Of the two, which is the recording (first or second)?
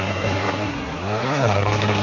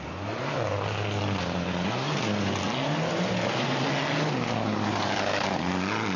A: second